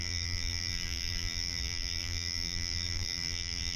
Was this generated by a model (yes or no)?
yes